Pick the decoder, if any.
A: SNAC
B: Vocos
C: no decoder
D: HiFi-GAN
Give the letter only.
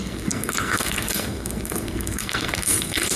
A